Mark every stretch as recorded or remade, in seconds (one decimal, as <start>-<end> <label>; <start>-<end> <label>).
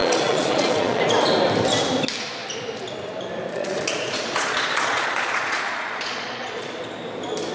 0.0-1.0 remade; 1.0-3.5 recorded; 3.5-6.8 remade; 6.8-7.5 recorded